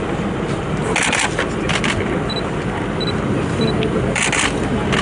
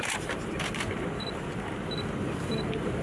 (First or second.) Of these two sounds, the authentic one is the first